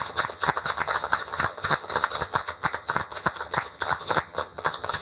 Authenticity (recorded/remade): remade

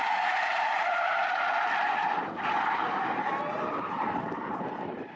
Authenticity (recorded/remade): recorded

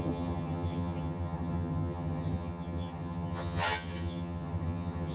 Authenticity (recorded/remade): remade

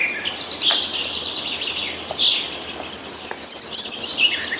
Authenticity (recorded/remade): recorded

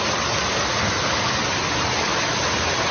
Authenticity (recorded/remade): recorded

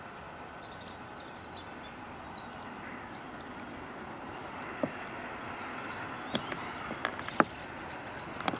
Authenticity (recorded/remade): recorded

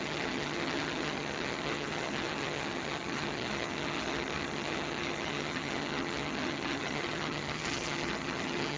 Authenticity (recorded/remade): remade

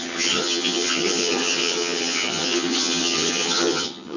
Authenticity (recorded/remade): remade